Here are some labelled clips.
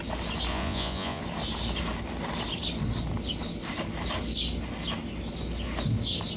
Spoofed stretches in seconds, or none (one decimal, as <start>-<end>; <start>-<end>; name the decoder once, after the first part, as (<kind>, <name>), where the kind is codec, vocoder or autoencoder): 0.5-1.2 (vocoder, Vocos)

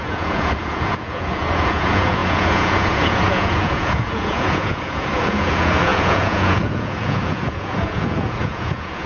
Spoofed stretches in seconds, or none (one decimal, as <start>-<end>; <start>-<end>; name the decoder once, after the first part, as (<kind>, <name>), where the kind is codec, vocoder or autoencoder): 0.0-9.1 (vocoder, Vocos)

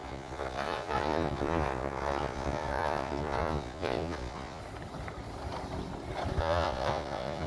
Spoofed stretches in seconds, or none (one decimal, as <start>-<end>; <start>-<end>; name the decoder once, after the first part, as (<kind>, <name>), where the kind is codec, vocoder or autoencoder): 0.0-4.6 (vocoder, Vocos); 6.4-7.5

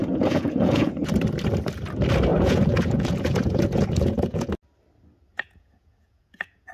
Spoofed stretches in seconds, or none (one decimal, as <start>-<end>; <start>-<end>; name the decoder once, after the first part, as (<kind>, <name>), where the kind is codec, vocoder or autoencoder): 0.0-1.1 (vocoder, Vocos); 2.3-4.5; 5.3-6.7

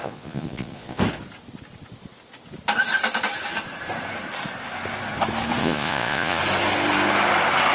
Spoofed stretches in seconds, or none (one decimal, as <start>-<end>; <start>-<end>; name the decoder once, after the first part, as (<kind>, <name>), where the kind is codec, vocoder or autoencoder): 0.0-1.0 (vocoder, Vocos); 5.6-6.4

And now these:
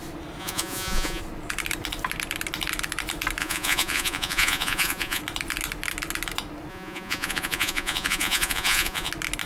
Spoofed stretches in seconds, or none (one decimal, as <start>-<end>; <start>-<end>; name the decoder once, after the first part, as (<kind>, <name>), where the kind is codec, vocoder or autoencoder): 0.4-1.2 (vocoder, Vocos); 3.4-5.2; 6.7-9.1